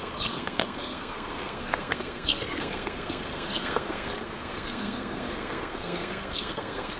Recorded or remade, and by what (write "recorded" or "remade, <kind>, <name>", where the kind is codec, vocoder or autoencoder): remade, codec, SNAC